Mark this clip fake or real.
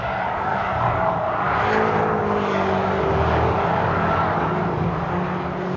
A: fake